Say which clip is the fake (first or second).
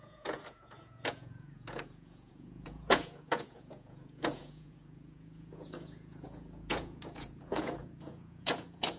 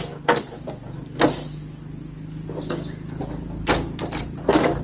first